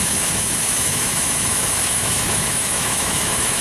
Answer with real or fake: fake